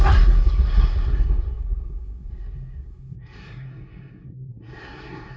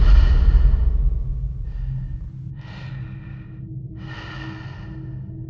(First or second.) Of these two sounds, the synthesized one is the first